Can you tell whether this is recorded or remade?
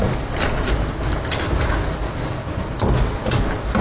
recorded